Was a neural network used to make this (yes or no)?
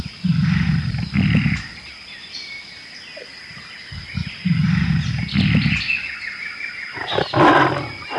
no